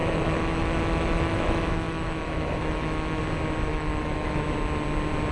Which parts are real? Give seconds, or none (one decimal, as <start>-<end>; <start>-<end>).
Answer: 3.2-3.7; 4.4-5.3